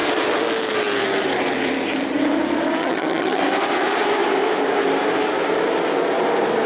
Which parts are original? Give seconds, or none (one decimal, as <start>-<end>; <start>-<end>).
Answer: 0.0-2.8; 3.4-6.7